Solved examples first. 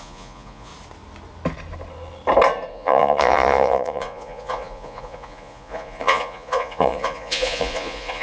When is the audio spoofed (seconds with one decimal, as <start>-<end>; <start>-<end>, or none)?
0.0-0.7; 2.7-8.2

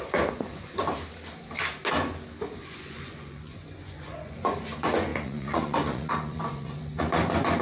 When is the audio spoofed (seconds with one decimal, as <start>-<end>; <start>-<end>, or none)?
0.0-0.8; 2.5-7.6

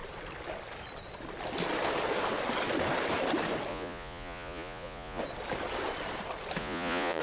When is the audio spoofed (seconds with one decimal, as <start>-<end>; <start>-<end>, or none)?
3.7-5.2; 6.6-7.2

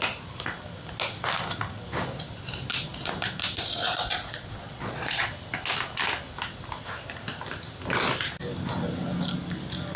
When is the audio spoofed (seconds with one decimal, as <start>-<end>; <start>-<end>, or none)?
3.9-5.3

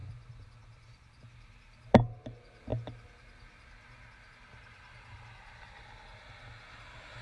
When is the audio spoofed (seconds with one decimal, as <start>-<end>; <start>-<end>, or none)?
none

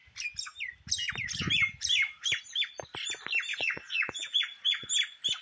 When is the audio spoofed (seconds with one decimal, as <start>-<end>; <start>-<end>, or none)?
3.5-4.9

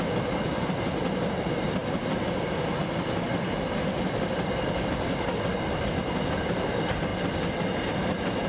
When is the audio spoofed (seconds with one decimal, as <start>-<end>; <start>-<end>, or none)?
none